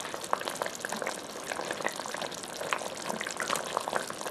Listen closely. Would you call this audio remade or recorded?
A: recorded